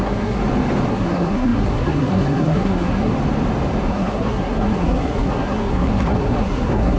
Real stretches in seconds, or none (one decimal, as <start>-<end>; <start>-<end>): 0.4-0.9; 3.1-3.9